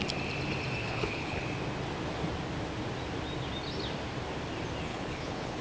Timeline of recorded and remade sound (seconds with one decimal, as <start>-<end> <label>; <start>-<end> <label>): 0.0-0.8 recorded; 0.8-1.4 remade; 1.4-4.9 recorded; 4.9-5.6 remade